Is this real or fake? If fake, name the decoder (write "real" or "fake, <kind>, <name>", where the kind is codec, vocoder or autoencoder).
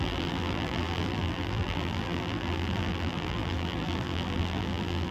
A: fake, vocoder, BigVGAN v2